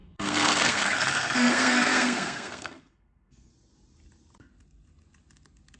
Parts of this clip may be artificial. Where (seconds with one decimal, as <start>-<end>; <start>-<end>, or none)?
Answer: 0.0-3.5